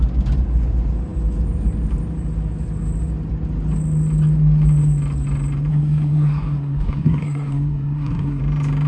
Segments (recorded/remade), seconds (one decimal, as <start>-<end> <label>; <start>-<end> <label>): 0.0-5.7 recorded; 5.7-8.4 remade; 8.4-8.9 recorded